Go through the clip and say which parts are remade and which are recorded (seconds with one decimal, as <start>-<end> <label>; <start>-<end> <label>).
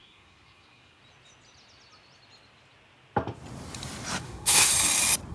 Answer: 0.0-1.0 remade; 1.0-4.2 recorded; 4.2-4.7 remade; 4.7-5.3 recorded